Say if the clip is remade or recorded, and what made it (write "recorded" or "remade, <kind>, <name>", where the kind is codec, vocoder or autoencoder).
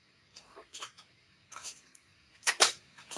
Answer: remade, codec, SNAC